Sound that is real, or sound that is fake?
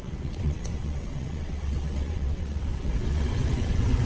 fake